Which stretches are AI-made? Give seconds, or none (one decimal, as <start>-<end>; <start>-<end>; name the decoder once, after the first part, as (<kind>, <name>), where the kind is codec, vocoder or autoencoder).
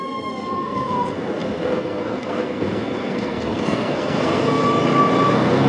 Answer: 0.0-4.6 (codec, SNAC); 5.3-5.7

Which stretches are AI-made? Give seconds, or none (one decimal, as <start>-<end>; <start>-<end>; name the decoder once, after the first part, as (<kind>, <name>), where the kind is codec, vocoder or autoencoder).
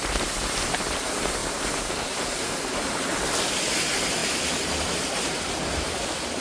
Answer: none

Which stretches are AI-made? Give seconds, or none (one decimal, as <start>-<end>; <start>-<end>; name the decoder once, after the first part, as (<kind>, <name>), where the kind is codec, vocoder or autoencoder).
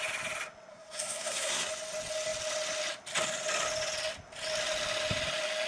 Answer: 0.7-1.7 (codec, SNAC)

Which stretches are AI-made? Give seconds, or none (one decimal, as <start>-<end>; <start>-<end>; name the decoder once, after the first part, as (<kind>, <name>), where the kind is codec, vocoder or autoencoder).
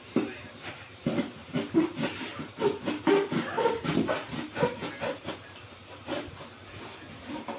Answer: 0.0-4.8 (vocoder, BigVGAN v2); 5.3-6.6; 7.1-7.6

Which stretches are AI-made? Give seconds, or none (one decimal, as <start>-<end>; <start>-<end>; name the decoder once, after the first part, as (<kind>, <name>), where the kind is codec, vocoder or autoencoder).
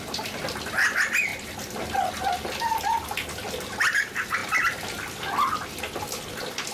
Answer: none